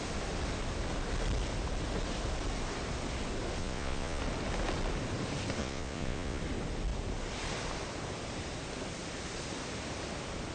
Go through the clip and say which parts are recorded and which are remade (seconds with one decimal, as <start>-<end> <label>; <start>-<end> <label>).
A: 0.0-3.6 recorded; 3.6-4.2 remade; 4.2-5.6 recorded; 5.6-6.4 remade; 6.4-10.5 recorded